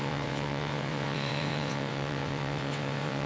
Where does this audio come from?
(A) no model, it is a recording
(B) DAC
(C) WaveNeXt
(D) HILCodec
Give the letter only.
C